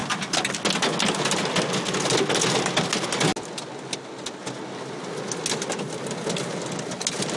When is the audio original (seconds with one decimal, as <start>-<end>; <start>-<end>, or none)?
0.0-7.4